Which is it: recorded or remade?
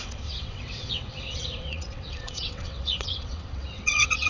remade